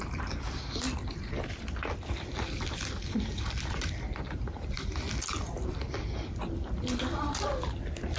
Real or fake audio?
real